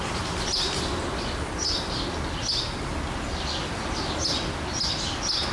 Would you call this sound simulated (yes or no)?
no